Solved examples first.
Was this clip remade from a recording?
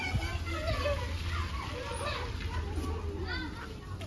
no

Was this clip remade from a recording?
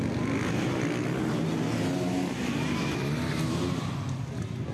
no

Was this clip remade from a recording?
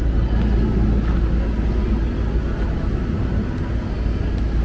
no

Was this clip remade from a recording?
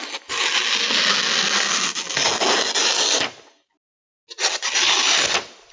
no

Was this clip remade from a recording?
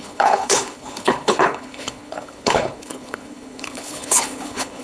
yes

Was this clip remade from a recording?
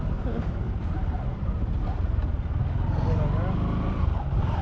no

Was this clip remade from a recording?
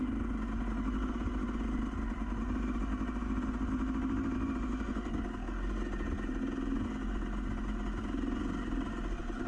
no